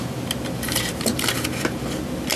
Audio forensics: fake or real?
real